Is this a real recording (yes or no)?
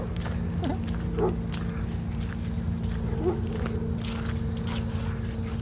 yes